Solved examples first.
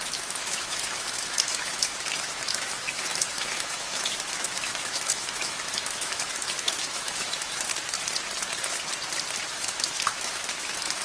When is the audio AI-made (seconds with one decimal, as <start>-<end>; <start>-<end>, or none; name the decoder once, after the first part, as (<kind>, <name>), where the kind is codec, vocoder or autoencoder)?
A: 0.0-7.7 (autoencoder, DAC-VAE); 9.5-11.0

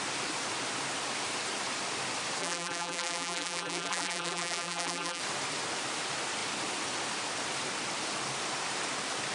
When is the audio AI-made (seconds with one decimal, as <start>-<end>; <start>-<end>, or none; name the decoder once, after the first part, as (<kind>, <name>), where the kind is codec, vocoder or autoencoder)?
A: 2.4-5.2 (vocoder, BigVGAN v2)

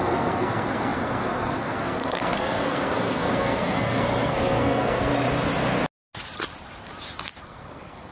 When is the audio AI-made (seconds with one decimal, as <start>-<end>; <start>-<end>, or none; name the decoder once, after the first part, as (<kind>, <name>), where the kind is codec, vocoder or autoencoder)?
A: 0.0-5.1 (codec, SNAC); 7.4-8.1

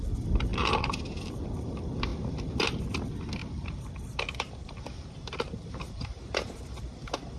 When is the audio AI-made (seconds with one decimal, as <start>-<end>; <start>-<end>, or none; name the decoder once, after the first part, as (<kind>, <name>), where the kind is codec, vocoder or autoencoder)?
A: 0.5-1.4 (vocoder, BigVGAN v2); 2.1-2.8; 3.4-6.6

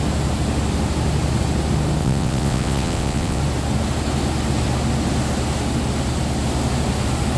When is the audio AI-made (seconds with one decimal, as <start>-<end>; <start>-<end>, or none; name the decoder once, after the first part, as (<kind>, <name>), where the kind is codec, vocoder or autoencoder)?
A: 2.0-3.4 (vocoder, WaveNeXt)